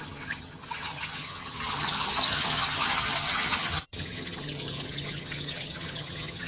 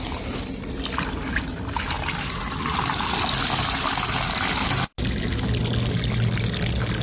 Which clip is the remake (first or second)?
first